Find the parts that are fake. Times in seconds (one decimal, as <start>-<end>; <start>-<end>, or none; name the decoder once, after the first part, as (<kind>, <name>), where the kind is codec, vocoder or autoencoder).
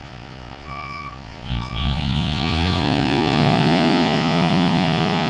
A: 0.0-5.3 (vocoder, Vocos)